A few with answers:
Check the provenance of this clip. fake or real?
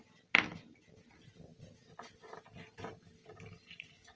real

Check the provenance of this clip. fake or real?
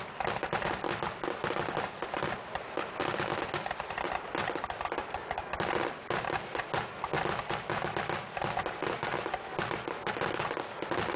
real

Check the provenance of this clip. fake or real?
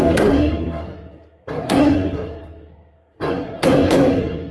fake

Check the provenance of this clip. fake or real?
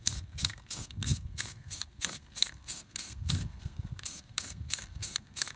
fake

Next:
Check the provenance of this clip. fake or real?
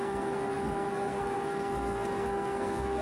fake